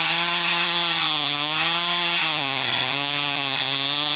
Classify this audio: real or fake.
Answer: fake